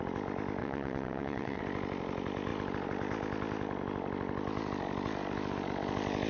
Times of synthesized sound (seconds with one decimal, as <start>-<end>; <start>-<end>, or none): 0.6-1.6